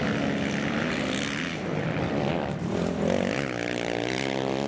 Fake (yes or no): no